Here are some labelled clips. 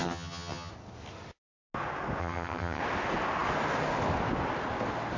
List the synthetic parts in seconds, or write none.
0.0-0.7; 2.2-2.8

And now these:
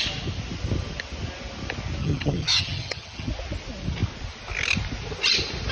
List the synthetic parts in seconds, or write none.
2.0-3.3